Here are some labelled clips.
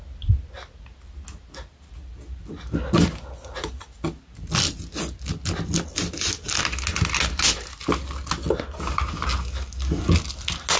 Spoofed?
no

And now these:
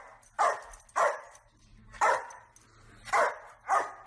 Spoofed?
no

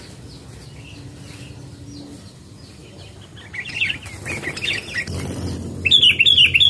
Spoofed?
no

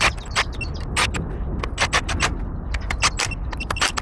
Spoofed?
no